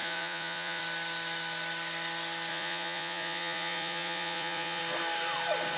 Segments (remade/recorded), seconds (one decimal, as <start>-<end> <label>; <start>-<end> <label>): 0.0-0.8 remade; 0.8-2.5 recorded; 2.5-4.8 remade; 4.8-5.8 recorded